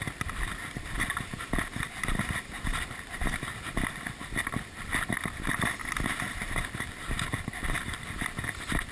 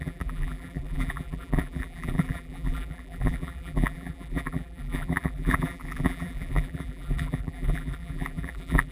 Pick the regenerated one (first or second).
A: second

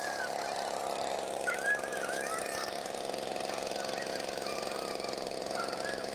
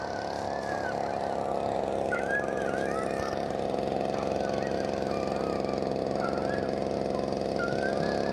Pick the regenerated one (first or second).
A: first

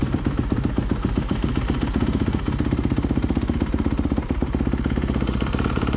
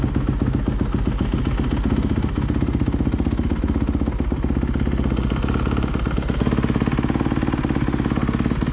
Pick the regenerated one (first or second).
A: first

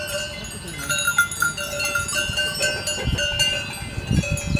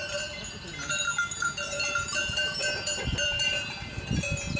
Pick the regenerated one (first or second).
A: second